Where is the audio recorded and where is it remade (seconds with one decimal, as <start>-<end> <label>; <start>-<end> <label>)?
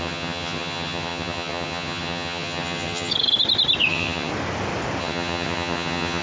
0.0-3.1 remade; 3.1-3.9 recorded; 3.9-4.3 remade; 4.3-5.0 recorded; 5.0-6.2 remade